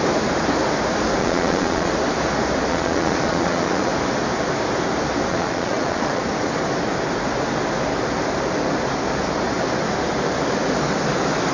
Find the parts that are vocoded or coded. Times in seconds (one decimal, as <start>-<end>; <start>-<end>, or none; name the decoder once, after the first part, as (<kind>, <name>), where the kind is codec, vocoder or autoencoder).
1.2-1.9 (vocoder, Vocos); 2.7-3.9; 5.3-6.2